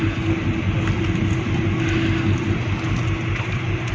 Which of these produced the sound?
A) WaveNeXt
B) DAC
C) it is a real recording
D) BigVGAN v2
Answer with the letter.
C